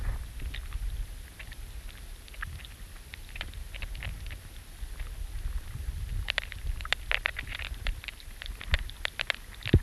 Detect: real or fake real